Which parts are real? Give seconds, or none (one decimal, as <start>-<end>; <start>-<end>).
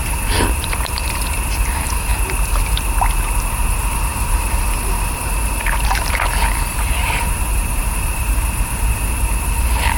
2.1-3.4